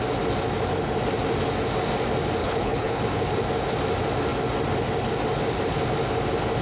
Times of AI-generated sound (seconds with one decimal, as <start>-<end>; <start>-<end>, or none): 2.4-3.0